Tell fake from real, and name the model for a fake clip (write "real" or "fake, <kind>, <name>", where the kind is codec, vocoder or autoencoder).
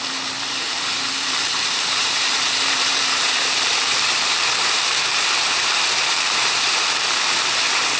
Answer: fake, vocoder, BigVGAN v2